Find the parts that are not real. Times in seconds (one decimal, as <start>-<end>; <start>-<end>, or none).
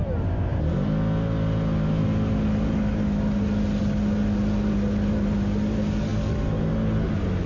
none